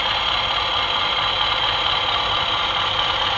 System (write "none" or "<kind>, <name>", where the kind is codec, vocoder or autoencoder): none